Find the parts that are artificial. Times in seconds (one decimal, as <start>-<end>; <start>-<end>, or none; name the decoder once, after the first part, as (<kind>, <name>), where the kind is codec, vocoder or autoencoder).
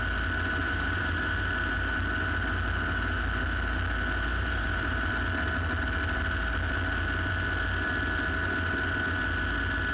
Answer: 0.6-1.3 (vocoder, BigVGAN v2); 4.3-5.1